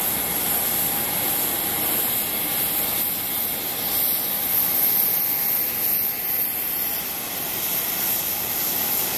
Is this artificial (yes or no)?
no